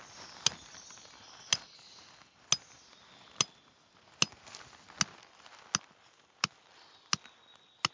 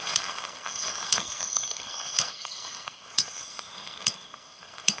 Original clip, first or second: first